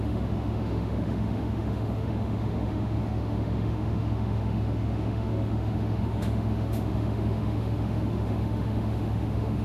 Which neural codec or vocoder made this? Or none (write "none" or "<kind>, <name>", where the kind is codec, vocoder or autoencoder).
autoencoder, DAC-VAE